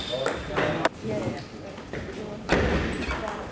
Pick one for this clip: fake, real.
real